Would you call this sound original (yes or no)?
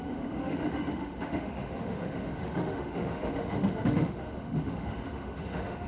no